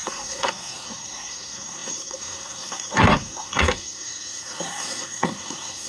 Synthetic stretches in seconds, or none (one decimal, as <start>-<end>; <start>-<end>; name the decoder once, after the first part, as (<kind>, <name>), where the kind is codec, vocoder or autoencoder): 0.0-5.9 (codec, SNAC)